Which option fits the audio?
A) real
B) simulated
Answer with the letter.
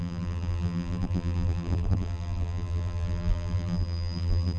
B